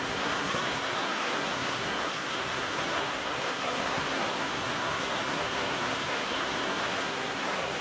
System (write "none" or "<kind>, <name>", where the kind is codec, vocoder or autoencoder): codec, SNAC